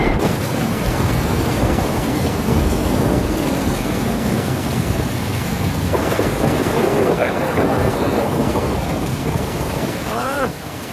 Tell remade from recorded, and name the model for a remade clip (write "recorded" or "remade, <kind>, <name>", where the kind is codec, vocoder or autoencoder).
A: remade, codec, SNAC